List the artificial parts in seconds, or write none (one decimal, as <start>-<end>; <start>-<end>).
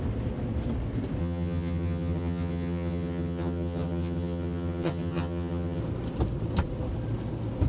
1.2-5.8